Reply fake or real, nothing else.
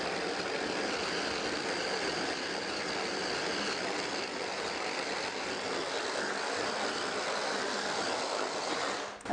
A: real